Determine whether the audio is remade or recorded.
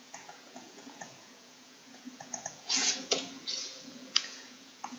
remade